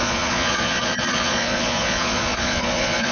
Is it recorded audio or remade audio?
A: remade